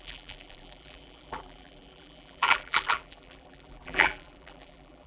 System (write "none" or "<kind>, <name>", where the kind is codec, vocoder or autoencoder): vocoder, BigVGAN v2